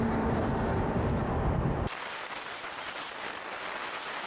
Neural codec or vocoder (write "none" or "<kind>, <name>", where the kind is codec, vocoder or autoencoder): none